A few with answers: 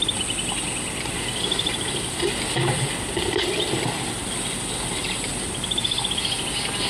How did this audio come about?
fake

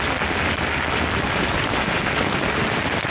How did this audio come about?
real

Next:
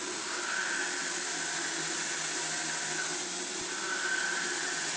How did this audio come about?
real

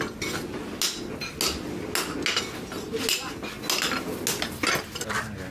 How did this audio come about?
real